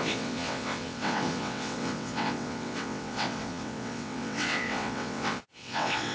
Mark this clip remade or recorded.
remade